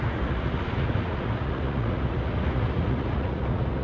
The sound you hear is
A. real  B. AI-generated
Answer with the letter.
B